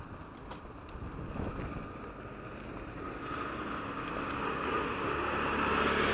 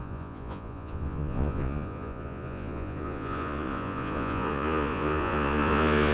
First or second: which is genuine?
first